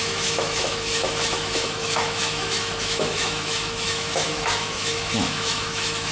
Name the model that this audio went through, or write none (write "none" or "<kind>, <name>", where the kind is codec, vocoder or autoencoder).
autoencoder, DAC-VAE